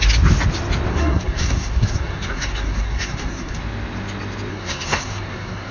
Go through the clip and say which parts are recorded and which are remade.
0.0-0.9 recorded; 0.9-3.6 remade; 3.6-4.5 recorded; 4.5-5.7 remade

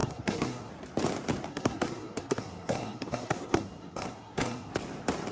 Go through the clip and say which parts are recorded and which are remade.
0.0-0.7 remade; 0.7-1.5 recorded; 1.5-4.7 remade; 4.7-5.3 recorded

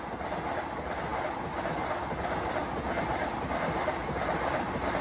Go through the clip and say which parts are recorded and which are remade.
0.0-5.0 recorded

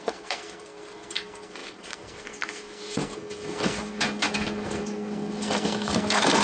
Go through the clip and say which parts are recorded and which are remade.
0.0-6.4 remade

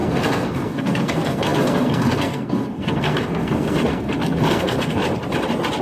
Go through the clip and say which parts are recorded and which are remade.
0.0-5.0 remade; 5.0-5.8 recorded

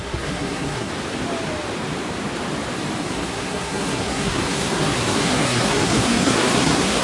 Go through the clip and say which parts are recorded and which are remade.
0.0-0.9 remade; 0.9-3.0 recorded; 3.0-7.0 remade

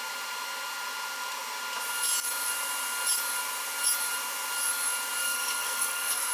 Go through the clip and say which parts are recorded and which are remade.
0.0-5.2 recorded; 5.2-6.3 remade